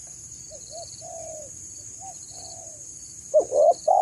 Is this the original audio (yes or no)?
no